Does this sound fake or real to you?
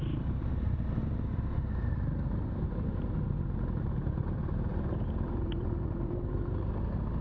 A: fake